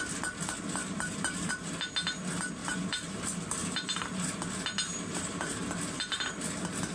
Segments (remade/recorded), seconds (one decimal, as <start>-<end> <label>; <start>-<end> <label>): 0.0-0.8 recorded; 0.8-1.5 remade; 1.5-2.6 recorded; 2.6-3.2 remade; 3.2-3.6 recorded; 3.6-4.3 remade; 4.3-4.9 recorded; 4.9-6.3 remade; 6.3-6.9 recorded